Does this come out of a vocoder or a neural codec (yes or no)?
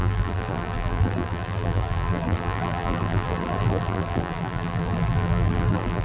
yes